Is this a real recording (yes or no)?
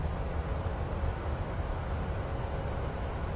yes